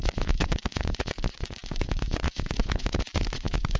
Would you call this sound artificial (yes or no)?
yes